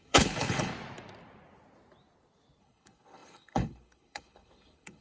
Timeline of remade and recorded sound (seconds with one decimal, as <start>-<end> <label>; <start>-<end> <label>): 0.0-0.7 remade; 0.7-2.6 recorded; 2.6-5.0 remade